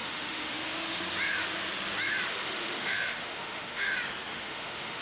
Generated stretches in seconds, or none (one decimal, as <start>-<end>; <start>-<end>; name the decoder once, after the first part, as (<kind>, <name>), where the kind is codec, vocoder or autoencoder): 0.0-1.0 (autoencoder, DAC-VAE); 2.3-3.9; 4.3-5.0

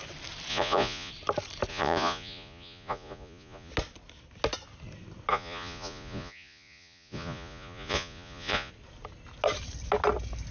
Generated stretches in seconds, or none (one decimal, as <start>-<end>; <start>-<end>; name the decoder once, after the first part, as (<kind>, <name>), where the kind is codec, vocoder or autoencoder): 0.5-1.1 (vocoder, Vocos); 1.7-3.7; 5.3-8.7

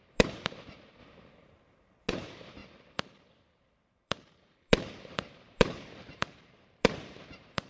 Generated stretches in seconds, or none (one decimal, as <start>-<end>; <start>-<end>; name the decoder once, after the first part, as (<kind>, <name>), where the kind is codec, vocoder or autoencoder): 0.0-7.7 (vocoder, BigVGAN v2)

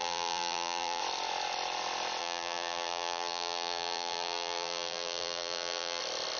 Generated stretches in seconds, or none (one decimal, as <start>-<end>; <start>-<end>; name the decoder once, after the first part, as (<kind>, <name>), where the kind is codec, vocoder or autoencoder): 0.0-1.0 (vocoder, BigVGAN v2); 2.2-6.0

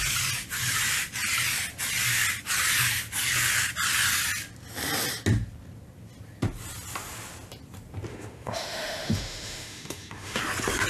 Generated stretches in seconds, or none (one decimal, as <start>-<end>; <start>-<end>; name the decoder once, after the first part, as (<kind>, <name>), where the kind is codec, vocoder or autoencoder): 8.1-10.4 (autoencoder, DAC-VAE)

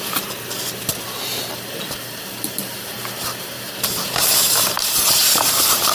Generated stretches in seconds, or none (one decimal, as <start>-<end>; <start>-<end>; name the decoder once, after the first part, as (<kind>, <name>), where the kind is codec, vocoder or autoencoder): 0.0-0.9 (vocoder, BigVGAN v2); 1.5-5.9

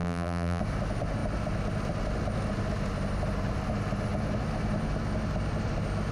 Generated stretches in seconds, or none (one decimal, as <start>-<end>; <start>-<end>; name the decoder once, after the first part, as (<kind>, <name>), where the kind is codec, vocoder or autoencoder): 0.0-0.6 (vocoder, BigVGAN v2)